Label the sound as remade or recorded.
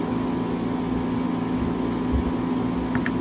recorded